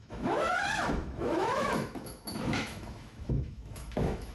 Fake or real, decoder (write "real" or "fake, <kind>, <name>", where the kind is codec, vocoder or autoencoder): fake, autoencoder, DAC-VAE